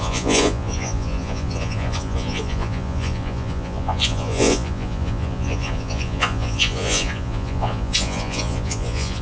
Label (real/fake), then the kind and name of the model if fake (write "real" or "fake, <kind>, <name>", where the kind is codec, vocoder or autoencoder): fake, vocoder, Vocos